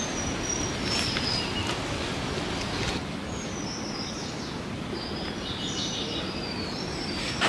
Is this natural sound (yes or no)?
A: yes